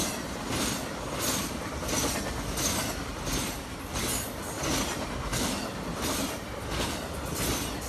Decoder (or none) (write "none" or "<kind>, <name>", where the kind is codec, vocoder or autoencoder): none